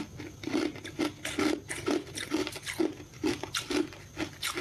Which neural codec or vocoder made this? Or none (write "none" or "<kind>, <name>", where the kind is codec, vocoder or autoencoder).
none